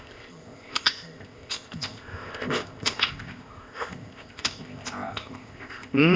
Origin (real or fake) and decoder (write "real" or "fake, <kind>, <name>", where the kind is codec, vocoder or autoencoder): fake, codec, ZipCodec